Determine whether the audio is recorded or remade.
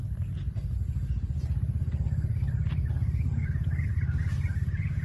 recorded